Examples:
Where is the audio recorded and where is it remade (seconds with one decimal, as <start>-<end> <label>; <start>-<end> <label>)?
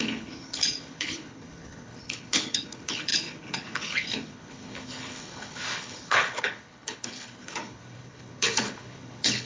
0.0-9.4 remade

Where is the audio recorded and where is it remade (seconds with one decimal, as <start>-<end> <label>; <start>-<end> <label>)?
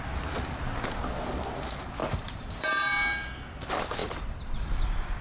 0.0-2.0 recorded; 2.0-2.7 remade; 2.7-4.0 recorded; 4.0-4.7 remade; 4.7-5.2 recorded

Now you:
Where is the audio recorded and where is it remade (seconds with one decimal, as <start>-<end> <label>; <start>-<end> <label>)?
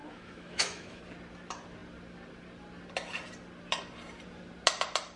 0.0-1.0 remade; 1.0-5.2 recorded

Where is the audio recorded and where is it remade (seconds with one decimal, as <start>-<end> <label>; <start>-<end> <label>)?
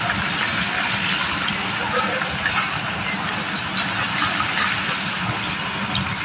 0.0-6.2 recorded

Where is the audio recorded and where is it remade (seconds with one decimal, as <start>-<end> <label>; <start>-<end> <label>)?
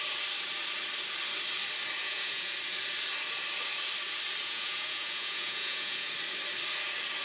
0.0-2.0 recorded; 2.0-2.5 remade; 2.5-4.4 recorded; 4.4-6.1 remade; 6.1-7.2 recorded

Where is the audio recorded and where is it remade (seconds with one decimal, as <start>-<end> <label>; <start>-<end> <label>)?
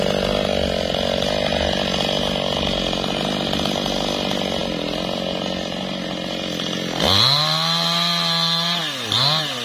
0.0-9.6 recorded